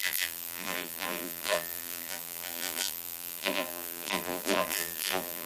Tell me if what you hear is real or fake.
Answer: fake